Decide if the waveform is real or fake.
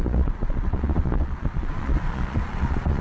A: fake